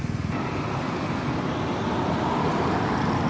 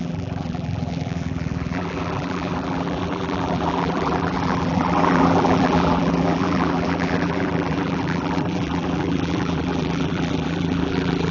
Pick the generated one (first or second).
second